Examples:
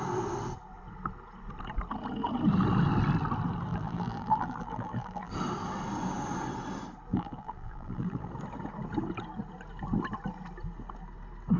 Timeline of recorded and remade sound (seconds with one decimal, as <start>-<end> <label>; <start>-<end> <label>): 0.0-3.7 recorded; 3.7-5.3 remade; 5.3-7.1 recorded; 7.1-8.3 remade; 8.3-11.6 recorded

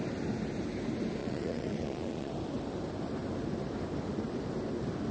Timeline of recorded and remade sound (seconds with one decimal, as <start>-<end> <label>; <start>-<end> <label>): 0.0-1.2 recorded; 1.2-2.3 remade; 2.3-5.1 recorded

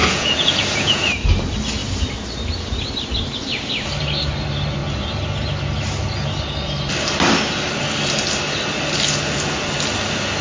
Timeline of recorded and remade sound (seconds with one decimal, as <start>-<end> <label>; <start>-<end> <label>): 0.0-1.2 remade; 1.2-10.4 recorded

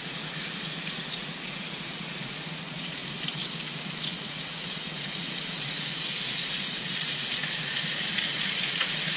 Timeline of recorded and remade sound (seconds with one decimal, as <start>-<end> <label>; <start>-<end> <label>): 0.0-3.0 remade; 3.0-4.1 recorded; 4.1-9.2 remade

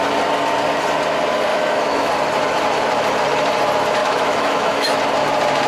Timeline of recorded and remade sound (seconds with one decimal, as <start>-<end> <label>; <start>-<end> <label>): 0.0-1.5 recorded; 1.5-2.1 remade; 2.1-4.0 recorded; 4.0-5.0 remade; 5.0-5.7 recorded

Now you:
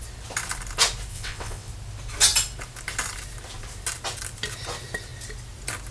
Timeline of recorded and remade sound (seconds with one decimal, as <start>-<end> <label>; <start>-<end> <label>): 0.0-1.1 recorded; 1.1-1.7 remade; 1.7-5.9 recorded

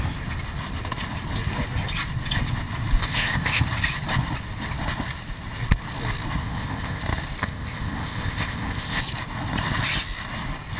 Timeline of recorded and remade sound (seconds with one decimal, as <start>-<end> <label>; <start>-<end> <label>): 0.0-3.0 recorded; 3.0-3.6 remade; 3.6-6.4 recorded; 6.4-7.0 remade; 7.0-7.4 recorded; 7.4-9.0 remade; 9.0-10.8 recorded